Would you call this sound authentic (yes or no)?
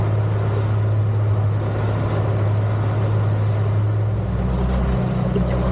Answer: yes